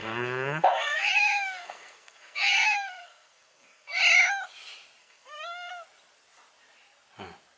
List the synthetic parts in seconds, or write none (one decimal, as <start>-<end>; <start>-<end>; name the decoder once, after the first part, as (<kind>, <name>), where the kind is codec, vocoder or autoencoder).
0.0-4.0 (codec, SNAC); 5.0-5.7